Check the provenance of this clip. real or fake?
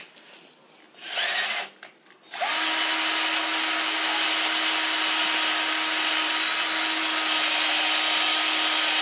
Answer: real